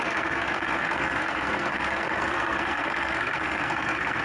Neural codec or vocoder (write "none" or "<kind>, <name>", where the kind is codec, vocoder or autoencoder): codec, SNAC